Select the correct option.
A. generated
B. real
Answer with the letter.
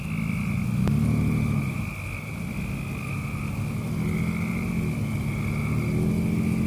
B